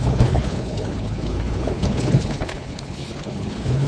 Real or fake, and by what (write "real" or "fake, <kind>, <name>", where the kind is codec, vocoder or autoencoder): fake, codec, HILCodec